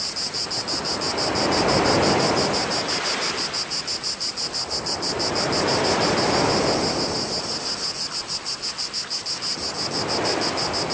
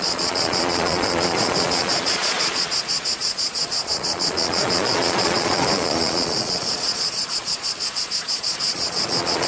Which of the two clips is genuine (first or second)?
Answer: first